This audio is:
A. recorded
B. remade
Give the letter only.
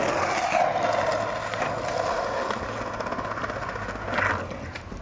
A